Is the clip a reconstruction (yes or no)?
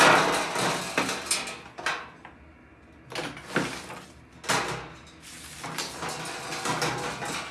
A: no